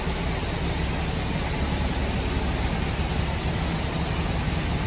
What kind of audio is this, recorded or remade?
recorded